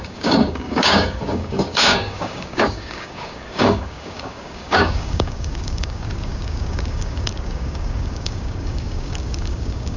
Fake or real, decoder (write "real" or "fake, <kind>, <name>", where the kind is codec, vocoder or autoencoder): fake, codec, DAC